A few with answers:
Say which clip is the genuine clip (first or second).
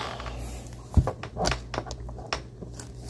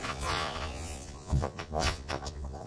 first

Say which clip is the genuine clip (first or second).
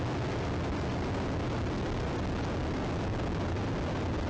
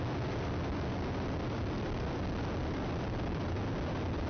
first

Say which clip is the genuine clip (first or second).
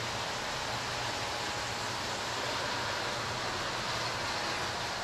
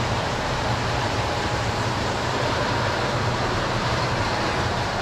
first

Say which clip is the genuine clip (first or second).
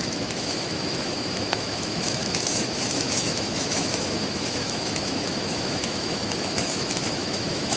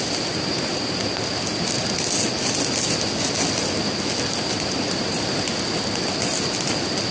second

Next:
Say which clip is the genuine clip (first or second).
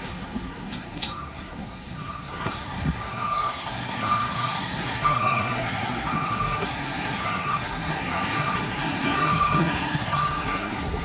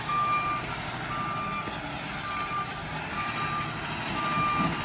second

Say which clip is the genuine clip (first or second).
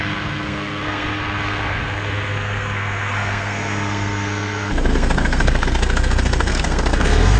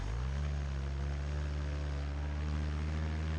second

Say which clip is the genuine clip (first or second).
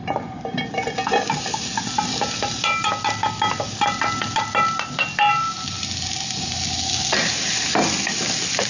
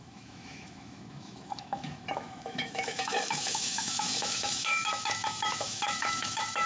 first